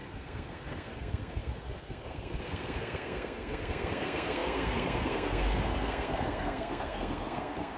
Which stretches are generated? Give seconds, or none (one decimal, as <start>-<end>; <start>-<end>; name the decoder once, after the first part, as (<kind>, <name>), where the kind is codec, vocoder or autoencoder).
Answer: 0.0-7.8 (codec, SNAC)